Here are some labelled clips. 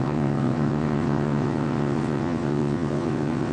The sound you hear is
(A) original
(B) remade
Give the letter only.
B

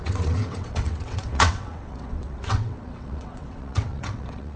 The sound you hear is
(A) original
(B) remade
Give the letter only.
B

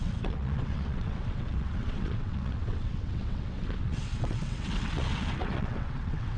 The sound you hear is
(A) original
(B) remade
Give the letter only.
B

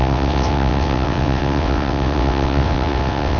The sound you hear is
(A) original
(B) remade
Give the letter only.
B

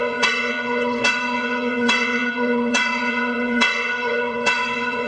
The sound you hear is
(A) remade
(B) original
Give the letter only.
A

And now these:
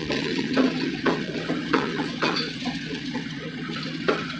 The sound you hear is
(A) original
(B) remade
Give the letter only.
B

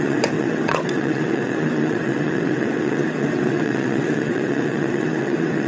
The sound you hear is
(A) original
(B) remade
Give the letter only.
B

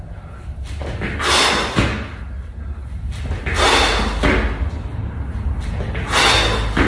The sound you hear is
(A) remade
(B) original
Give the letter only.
B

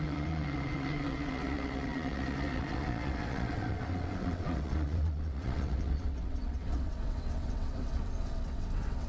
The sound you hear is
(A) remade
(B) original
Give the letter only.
A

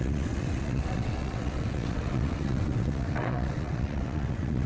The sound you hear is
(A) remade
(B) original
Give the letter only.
A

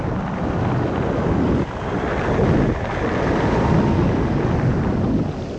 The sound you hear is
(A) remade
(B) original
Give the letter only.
B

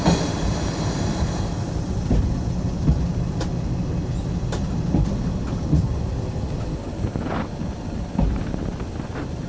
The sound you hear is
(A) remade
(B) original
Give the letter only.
B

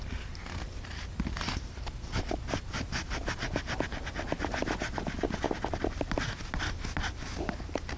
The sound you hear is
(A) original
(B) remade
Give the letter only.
A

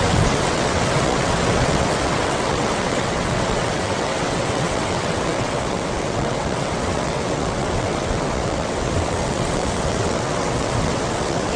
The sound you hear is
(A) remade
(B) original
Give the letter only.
A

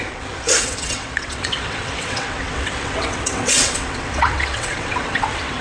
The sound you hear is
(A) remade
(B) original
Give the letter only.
A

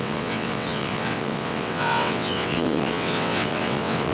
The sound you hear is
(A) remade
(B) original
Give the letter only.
A